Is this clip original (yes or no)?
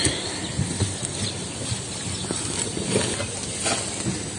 yes